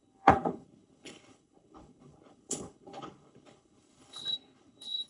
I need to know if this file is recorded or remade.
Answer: remade